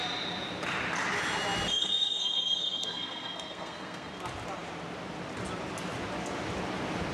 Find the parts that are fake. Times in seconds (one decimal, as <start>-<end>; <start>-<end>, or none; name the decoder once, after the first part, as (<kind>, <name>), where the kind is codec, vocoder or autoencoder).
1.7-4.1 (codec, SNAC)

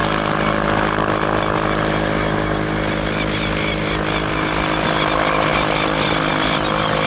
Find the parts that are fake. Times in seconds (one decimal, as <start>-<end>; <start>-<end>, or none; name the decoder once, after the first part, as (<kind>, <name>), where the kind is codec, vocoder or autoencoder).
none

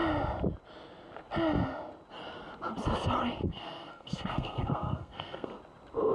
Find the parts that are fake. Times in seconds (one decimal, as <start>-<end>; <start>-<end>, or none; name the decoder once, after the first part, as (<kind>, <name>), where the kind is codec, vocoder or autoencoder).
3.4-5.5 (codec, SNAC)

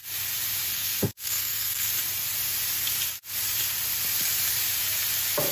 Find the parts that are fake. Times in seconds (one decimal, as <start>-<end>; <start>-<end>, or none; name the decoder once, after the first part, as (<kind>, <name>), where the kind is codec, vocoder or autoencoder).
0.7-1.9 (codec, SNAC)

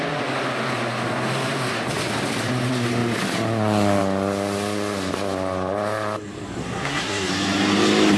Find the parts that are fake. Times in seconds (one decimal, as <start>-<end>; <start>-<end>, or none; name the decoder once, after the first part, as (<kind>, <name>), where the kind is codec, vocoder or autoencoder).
6.6-7.3 (codec, SNAC)

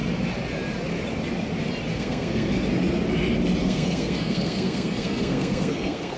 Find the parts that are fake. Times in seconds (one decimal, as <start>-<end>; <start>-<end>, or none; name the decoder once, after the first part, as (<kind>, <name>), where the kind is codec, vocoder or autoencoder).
1.9-2.5 (codec, SNAC); 3.6-6.2